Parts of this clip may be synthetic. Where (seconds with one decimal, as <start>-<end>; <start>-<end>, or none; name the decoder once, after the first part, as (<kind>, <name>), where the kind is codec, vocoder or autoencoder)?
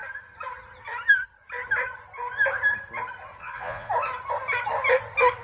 3.4-3.9 (vocoder, Vocos)